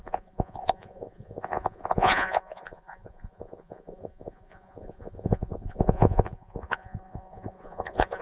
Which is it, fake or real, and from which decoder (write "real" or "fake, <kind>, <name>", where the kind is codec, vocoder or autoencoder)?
fake, vocoder, Vocos